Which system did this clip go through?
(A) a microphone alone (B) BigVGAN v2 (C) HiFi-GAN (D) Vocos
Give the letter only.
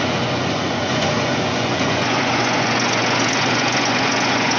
D